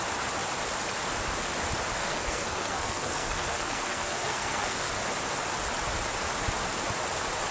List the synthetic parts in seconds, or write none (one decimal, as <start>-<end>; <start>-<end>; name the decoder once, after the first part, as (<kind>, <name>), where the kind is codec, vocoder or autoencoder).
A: 2.0-4.9 (codec, SNAC)